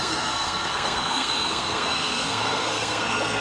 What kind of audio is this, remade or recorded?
remade